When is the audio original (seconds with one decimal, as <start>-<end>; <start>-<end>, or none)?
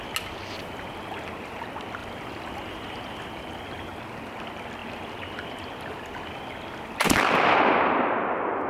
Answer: 0.0-2.0; 4.0-8.7